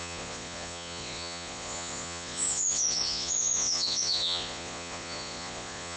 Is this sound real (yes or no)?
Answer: no